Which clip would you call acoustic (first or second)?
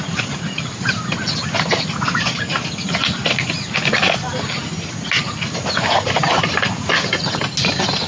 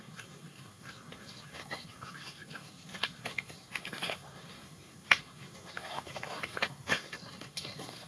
first